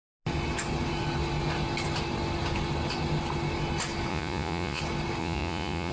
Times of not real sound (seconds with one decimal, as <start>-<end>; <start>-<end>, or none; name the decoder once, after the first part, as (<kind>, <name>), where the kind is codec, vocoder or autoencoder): 4.1-4.8 (vocoder, Vocos); 5.2-5.9